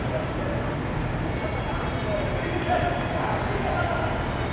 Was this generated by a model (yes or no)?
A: no